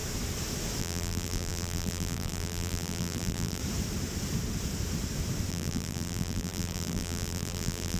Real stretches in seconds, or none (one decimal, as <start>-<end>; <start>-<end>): 0.0-0.8; 3.6-5.5